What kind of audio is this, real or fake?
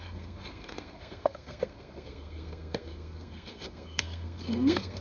fake